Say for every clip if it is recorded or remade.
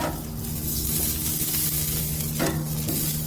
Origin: recorded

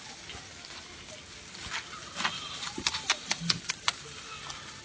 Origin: recorded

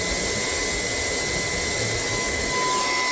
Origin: recorded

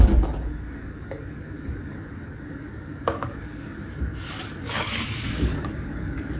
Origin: remade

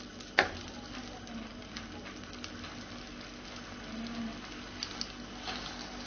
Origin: recorded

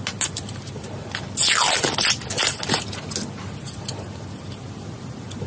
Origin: recorded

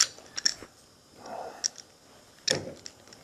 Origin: recorded